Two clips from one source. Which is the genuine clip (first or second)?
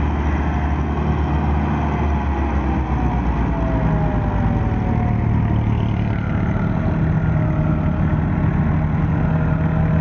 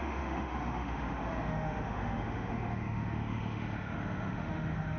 first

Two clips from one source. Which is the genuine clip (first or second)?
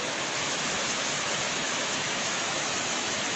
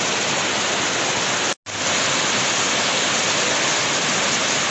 second